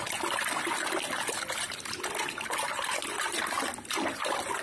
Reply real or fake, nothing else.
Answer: real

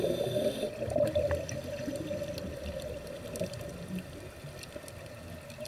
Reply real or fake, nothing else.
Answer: real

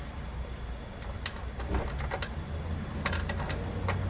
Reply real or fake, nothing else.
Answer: real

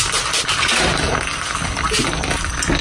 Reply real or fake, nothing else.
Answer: real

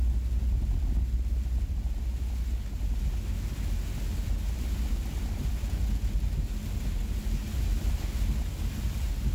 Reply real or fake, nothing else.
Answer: real